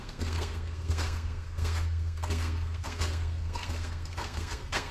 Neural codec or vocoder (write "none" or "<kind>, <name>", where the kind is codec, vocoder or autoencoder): codec, SNAC